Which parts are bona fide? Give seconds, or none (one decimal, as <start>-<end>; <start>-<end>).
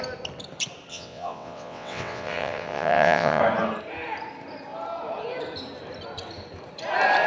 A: 0.0-0.9; 3.4-7.3